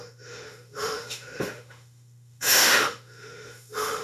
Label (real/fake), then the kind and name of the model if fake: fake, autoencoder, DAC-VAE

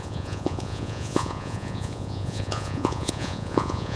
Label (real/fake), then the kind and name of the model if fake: fake, vocoder, Vocos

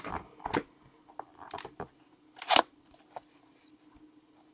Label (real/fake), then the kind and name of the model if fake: real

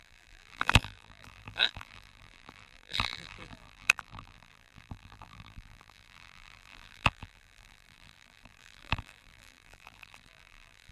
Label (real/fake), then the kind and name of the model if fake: fake, vocoder, BigVGAN v2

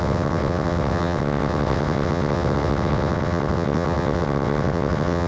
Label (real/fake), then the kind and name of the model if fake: fake, vocoder, WaveNeXt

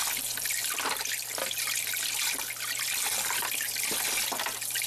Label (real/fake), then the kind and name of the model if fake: real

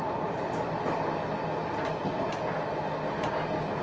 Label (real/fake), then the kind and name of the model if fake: real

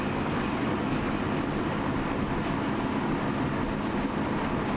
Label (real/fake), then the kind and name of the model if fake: real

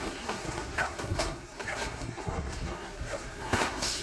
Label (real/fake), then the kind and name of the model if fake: fake, codec, SNAC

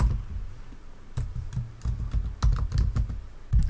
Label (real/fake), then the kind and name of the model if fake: real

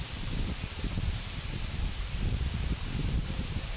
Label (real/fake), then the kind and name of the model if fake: fake, vocoder, BigVGAN v2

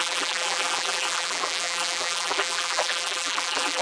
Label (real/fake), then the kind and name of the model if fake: fake, vocoder, BigVGAN v2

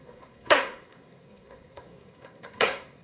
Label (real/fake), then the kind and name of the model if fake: fake, codec, SNAC